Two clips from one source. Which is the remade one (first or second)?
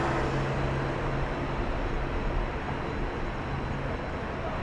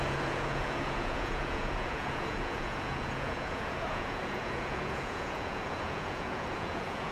second